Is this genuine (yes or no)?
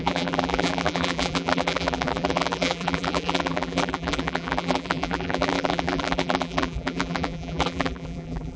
no